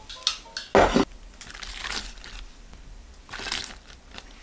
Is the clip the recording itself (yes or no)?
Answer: yes